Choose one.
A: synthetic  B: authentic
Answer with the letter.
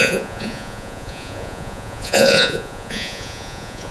A